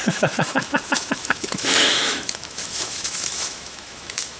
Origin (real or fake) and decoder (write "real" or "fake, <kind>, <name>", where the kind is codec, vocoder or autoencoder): fake, autoencoder, DAC-VAE